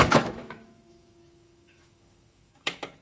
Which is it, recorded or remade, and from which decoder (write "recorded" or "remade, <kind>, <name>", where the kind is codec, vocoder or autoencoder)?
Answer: remade, autoencoder, DAC-VAE